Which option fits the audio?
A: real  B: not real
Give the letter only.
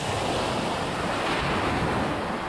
B